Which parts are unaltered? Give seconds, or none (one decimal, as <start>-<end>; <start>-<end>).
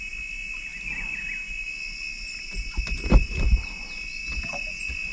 0.0-5.1